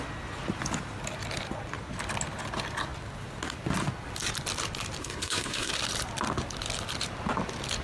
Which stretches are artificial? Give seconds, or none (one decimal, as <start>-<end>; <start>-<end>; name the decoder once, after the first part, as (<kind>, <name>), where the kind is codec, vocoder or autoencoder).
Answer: 5.0-5.7 (codec, SNAC)